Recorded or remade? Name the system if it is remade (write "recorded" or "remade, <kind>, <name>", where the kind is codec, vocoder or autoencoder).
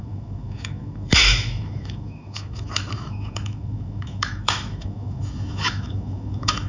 remade, autoencoder, DAC-VAE